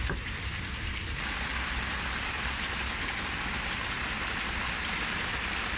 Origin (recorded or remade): recorded